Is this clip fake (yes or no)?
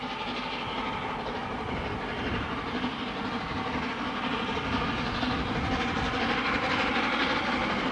no